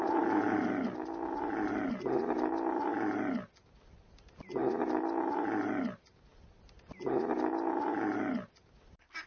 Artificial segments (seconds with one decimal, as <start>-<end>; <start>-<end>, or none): none